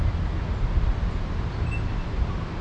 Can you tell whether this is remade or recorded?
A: recorded